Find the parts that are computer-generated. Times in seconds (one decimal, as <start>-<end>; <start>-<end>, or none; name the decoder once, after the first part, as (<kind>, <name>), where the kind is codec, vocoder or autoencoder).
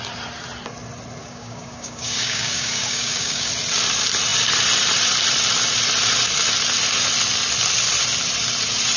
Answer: 1.2-3.5 (codec, DAC)